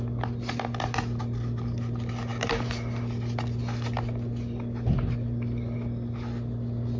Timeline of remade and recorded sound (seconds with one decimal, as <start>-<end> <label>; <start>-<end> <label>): 0.0-7.0 recorded